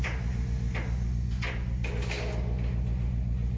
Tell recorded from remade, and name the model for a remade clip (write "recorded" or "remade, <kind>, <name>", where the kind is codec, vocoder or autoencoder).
recorded